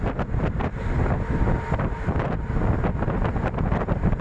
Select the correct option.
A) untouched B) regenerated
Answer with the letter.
A